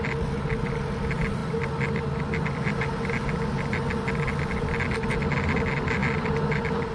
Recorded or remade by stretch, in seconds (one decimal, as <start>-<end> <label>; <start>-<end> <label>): 0.0-6.9 recorded